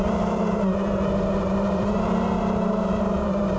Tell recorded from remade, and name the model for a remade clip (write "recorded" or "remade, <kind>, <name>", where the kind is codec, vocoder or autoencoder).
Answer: remade, vocoder, BigVGAN v2